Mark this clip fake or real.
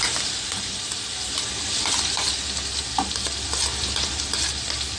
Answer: real